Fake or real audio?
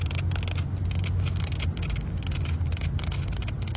real